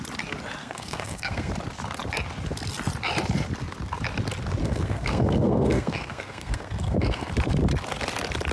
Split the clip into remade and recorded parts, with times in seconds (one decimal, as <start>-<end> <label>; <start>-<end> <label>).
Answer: 0.0-0.6 recorded; 0.6-1.5 remade; 1.5-4.6 recorded; 4.6-7.3 remade; 7.3-8.5 recorded